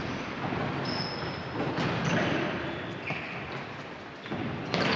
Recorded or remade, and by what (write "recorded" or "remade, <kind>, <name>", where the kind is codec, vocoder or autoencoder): recorded